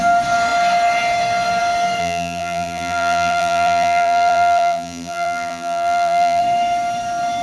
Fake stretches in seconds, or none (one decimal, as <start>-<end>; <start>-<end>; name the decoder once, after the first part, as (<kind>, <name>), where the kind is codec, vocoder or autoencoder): 2.0-6.4 (vocoder, BigVGAN v2)